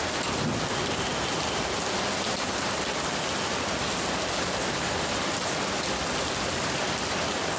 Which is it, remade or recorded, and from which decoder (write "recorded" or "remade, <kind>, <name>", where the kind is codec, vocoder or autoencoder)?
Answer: recorded